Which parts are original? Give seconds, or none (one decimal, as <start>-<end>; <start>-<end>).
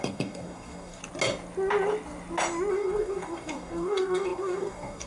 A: 1.0-2.7